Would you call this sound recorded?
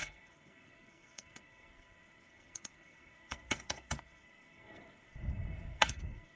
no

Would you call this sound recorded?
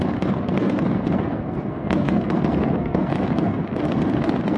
no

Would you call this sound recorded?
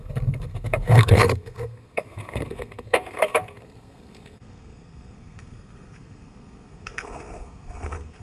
no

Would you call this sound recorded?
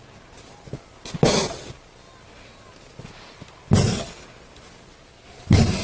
yes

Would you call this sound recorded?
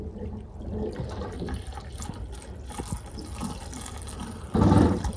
yes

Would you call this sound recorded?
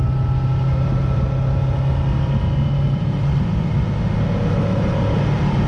yes